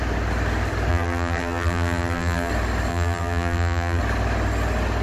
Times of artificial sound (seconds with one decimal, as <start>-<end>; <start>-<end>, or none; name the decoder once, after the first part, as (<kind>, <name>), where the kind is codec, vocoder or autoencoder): 0.9-2.5 (vocoder, BigVGAN v2); 2.9-4.0